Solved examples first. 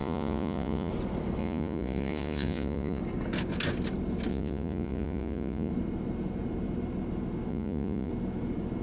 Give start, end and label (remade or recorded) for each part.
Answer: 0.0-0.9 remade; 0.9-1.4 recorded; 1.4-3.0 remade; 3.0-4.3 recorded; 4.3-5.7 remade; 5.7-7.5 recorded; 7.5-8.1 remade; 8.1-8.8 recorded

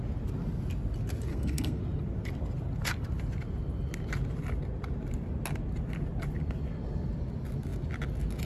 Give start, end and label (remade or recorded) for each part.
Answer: 0.0-1.3 recorded; 1.3-1.8 remade; 1.8-8.5 recorded

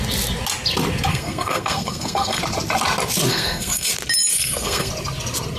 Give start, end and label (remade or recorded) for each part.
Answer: 0.0-1.1 recorded; 1.1-2.4 remade; 2.4-3.3 recorded; 3.3-3.9 remade; 3.9-4.3 recorded; 4.3-4.9 remade; 4.9-5.6 recorded

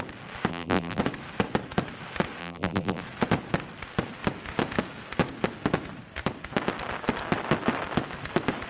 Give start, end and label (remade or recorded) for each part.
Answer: 0.0-0.5 recorded; 0.5-1.0 remade; 1.0-2.4 recorded; 2.4-3.0 remade; 3.0-8.7 recorded

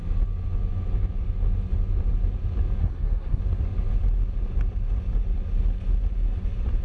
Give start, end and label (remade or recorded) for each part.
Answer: 0.0-2.8 recorded; 2.8-3.4 remade; 3.4-6.8 recorded

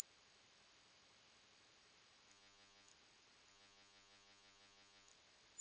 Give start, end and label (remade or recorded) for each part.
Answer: 0.0-2.3 recorded; 2.3-2.9 remade; 2.9-3.5 recorded; 3.5-5.1 remade; 5.1-5.6 recorded

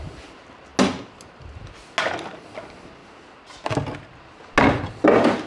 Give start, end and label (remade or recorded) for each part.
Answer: 0.0-5.5 recorded

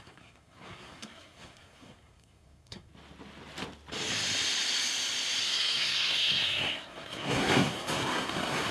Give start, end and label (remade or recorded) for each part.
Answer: 0.0-2.9 remade; 2.9-5.4 recorded; 5.4-8.7 remade